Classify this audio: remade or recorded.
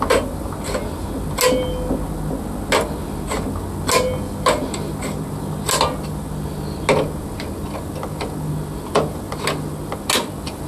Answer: recorded